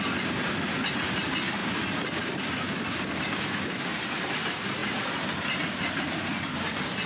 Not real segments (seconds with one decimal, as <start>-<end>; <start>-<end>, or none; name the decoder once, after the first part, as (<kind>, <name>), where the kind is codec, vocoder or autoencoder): 0.0-6.3 (vocoder, BigVGAN v2)